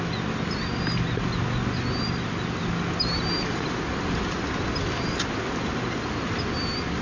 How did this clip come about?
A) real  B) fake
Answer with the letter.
A